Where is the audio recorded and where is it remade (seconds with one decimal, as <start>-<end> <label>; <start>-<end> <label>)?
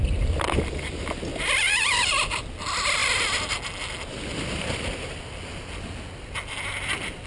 0.0-7.3 recorded